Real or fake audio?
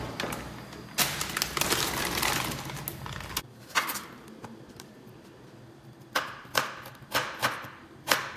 real